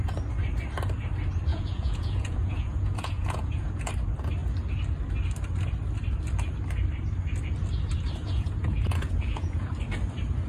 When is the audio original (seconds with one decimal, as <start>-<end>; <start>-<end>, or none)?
0.0-1.5; 3.9-8.2; 9.7-10.5